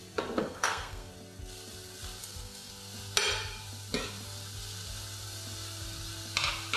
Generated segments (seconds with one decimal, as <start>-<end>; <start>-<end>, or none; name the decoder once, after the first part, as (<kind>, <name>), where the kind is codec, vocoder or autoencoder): 0.4-1.1 (codec, SNAC); 2.2-2.7